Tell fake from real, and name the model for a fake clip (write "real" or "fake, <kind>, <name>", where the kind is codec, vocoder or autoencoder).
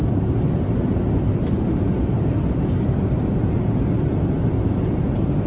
real